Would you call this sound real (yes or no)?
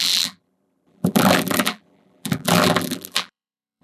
no